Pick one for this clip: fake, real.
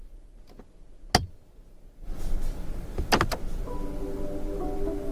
real